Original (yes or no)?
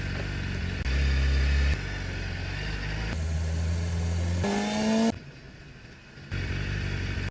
yes